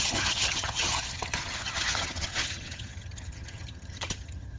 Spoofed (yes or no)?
yes